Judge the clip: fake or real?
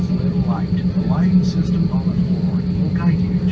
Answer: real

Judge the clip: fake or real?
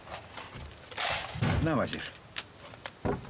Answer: real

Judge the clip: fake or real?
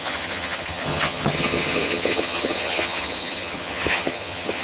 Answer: fake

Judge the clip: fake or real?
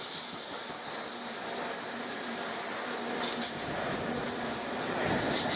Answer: real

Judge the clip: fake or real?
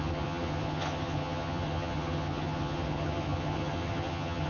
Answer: fake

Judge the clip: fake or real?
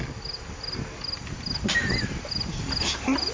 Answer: real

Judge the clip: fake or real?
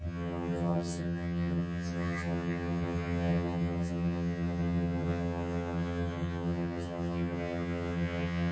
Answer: fake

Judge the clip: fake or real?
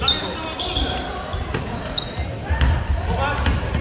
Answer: real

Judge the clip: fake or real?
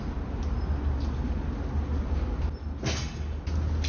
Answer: real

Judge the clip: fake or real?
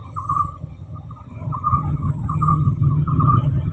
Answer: fake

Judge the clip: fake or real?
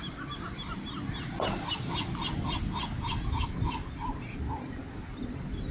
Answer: real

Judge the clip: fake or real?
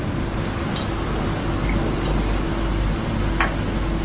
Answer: real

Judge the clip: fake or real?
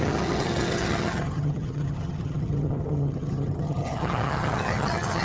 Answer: fake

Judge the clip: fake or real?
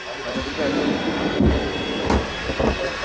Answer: real